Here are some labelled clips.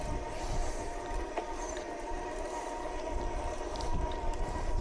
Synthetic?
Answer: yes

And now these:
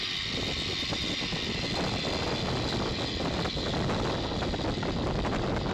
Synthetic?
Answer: no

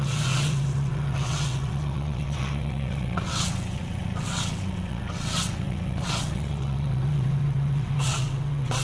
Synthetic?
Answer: yes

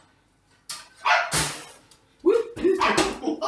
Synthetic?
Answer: no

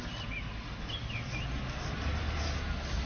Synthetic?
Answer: no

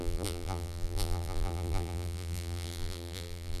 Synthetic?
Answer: yes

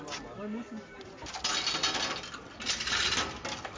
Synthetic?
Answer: no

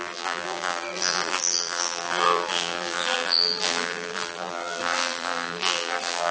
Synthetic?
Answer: yes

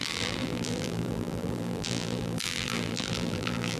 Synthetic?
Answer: yes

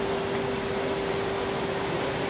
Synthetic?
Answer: no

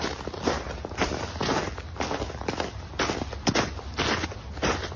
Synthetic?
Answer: no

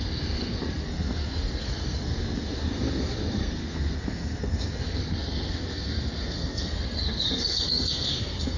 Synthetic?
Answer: yes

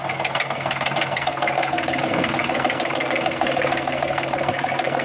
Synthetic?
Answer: yes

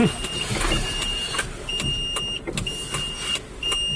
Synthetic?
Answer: no